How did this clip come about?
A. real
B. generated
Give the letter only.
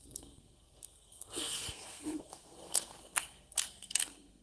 B